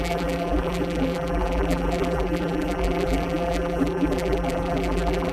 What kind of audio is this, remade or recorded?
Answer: remade